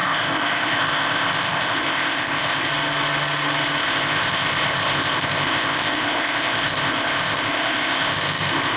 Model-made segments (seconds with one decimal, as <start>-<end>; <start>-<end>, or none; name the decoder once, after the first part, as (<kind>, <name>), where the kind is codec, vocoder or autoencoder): 0.0-2.7 (codec, ZipCodec); 3.8-8.8